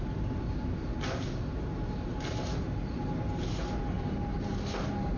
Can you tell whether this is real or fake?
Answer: real